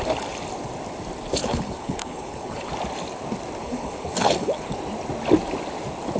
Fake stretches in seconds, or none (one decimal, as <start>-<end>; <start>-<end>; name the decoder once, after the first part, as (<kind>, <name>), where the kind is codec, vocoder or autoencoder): 1.4-2.7 (codec, HILCodec); 3.6-4.8